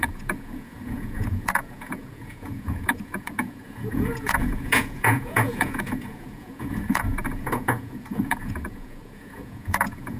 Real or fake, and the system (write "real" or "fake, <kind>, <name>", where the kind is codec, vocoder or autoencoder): fake, vocoder, Vocos